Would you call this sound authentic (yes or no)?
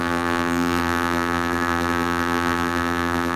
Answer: no